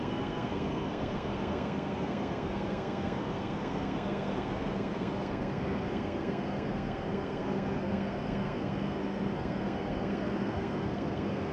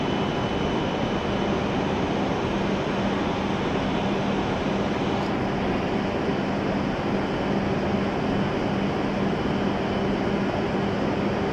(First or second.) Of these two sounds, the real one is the second